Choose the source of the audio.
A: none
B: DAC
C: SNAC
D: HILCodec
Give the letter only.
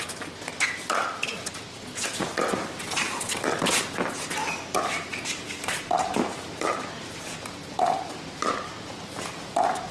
A